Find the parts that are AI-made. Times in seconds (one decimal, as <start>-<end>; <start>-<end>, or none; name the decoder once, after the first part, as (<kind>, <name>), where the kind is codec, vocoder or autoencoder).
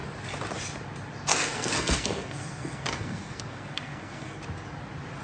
1.3-4.4 (codec, SNAC)